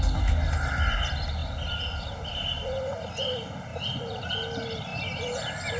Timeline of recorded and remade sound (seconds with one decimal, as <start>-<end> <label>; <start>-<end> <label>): 0.0-5.8 recorded